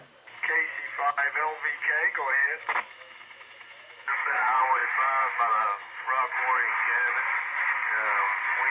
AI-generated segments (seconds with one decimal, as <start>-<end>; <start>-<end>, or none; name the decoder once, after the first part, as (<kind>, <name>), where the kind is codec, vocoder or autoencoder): 2.4-4.3 (autoencoder, DAC-VAE)